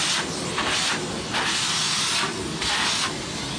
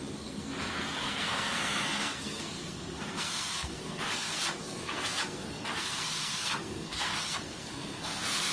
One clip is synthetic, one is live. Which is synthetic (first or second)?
second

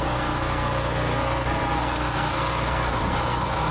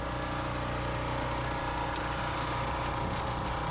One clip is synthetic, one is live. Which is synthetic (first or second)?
first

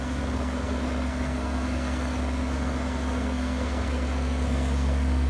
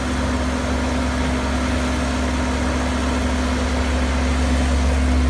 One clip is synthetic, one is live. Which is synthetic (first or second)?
first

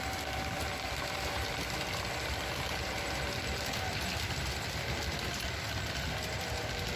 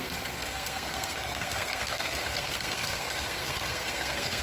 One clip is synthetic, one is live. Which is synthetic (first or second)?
second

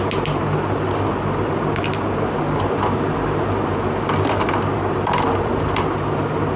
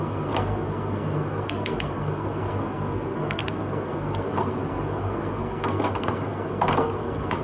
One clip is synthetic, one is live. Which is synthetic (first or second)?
second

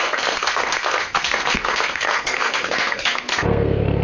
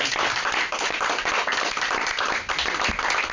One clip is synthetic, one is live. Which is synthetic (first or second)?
first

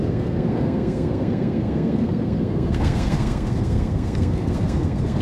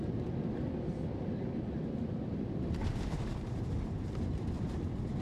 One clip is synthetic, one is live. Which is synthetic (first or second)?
first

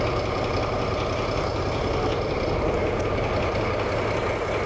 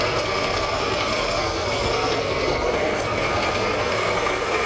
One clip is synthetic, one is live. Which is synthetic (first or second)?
second